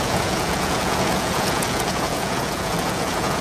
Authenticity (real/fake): fake